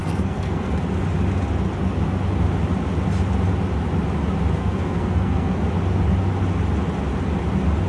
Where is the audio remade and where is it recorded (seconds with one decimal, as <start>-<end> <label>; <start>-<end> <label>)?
0.0-0.8 remade; 0.8-4.6 recorded; 4.6-5.6 remade; 5.6-7.9 recorded